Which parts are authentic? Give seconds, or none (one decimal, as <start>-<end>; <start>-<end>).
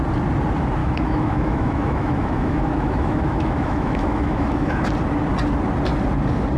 0.0-0.8; 4.8-6.6